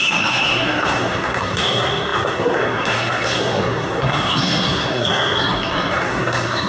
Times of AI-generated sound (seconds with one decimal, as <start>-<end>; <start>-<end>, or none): 0.0-6.7